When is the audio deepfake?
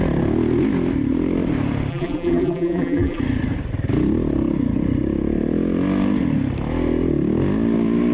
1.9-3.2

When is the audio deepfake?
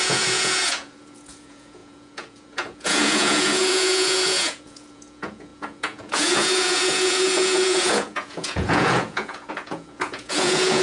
0.0-10.8